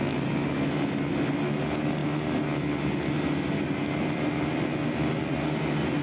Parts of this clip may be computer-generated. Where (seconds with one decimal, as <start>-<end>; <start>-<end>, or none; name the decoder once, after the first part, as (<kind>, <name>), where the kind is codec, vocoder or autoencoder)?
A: none